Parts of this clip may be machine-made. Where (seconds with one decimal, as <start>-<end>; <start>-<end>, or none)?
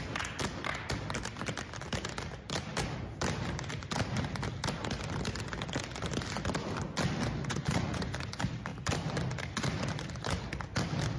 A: 7.4-8.1